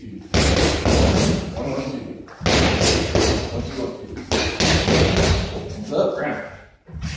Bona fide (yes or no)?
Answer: yes